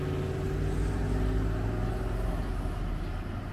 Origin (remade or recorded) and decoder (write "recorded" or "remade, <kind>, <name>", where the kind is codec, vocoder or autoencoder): recorded